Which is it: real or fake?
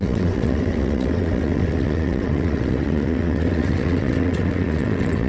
fake